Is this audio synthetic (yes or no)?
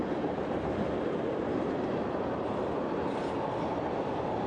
no